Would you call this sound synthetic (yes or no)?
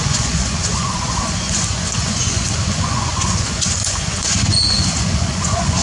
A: yes